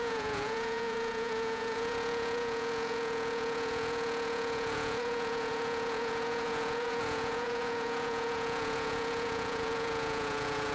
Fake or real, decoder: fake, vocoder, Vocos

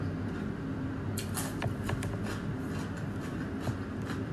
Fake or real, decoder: real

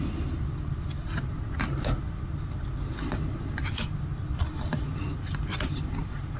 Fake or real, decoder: real